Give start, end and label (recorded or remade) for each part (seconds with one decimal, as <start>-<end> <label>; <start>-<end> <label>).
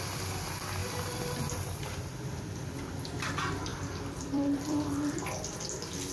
0.0-0.8 recorded; 0.8-2.4 remade; 2.4-3.7 recorded; 3.7-5.6 remade; 5.6-6.1 recorded